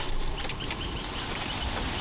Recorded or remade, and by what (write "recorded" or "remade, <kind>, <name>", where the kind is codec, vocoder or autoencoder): recorded